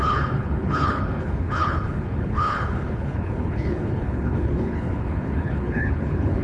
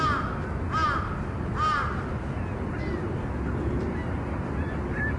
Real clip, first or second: second